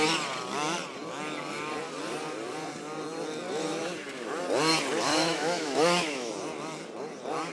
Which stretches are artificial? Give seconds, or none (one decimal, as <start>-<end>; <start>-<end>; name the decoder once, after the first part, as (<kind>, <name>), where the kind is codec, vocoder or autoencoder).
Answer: 5.1-6.3 (autoencoder, DAC-VAE)